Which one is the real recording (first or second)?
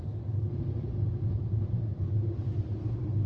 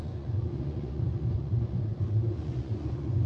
first